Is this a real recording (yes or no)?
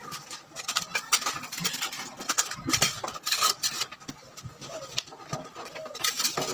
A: yes